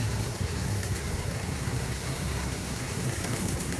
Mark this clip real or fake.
fake